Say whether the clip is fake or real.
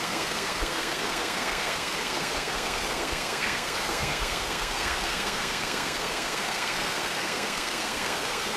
fake